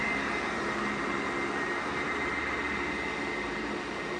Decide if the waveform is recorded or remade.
remade